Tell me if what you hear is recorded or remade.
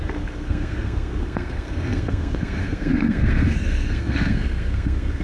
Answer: remade